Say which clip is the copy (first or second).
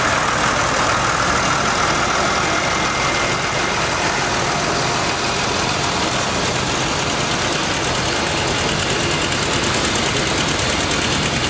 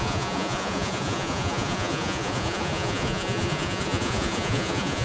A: second